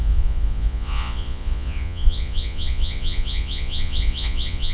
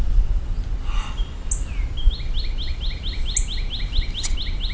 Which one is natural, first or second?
second